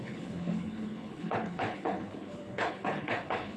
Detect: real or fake fake